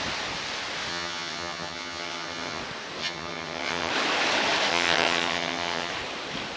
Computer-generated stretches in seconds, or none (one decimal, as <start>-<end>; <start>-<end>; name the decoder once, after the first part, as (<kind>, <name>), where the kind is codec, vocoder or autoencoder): 0.9-2.6 (vocoder, HiFi-GAN); 3.0-3.9; 4.7-5.9